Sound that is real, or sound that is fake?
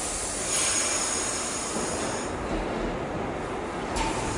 real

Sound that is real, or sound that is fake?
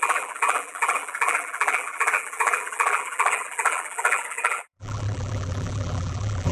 fake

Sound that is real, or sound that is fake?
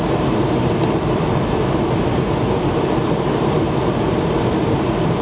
fake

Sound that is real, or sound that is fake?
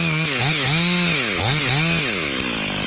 real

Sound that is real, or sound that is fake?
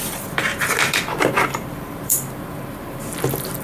fake